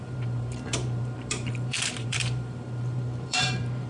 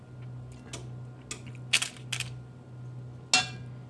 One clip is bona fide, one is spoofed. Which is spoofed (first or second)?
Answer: first